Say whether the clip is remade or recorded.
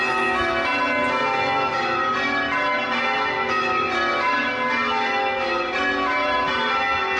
recorded